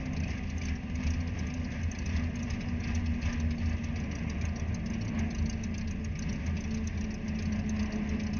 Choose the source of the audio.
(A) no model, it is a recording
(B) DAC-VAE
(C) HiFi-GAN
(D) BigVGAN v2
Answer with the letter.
A